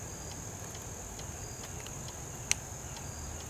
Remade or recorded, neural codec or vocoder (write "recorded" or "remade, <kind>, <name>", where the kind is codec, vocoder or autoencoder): recorded